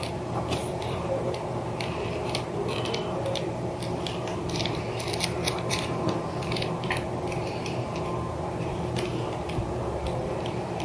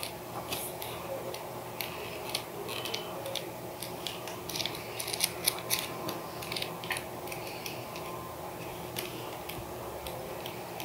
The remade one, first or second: first